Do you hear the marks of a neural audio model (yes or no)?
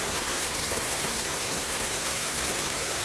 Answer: yes